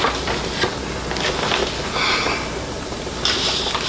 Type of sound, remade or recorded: recorded